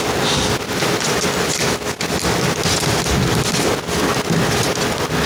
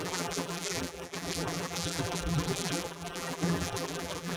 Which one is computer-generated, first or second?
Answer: second